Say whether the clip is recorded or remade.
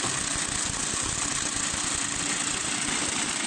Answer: recorded